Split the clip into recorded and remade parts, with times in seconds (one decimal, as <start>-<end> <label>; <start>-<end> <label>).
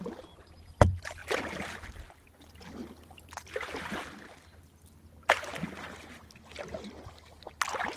0.0-1.2 recorded; 1.2-1.7 remade; 1.7-8.0 recorded